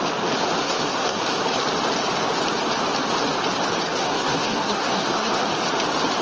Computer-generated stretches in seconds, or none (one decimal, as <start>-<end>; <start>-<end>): 0.6-1.2; 4.0-5.5